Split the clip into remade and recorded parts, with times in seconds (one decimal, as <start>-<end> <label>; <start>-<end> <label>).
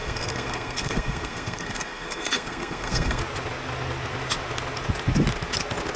0.0-3.2 remade; 3.2-6.0 recorded